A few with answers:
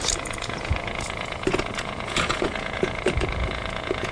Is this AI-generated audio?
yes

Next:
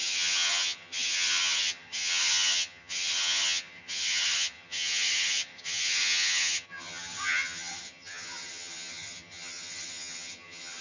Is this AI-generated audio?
yes